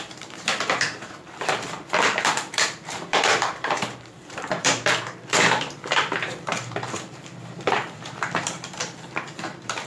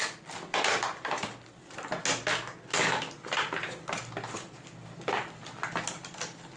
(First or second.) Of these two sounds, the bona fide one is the second